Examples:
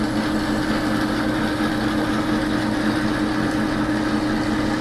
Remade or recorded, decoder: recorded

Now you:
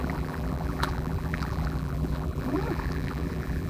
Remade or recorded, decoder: remade, vocoder, BigVGAN v2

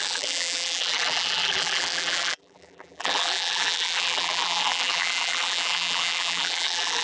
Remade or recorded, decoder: remade, vocoder, BigVGAN v2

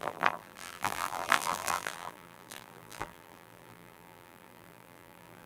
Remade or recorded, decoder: remade, vocoder, BigVGAN v2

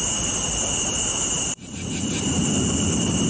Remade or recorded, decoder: remade, vocoder, BigVGAN v2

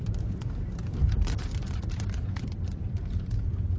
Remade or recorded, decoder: remade, vocoder, BigVGAN v2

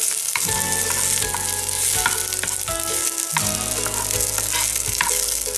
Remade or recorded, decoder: recorded